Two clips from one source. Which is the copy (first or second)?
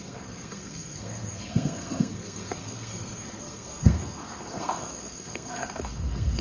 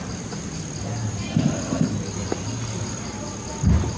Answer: first